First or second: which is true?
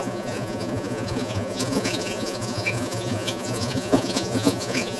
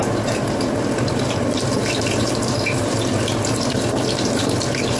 second